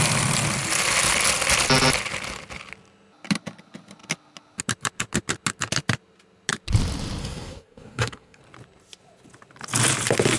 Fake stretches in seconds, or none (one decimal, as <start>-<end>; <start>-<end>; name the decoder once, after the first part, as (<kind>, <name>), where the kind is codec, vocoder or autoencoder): 7.2-8.4 (codec, SNAC)